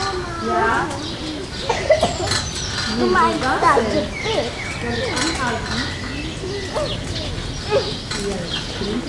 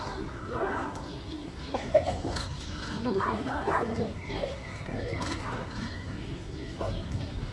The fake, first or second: second